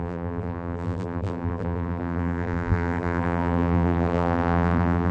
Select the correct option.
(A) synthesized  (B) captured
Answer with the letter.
A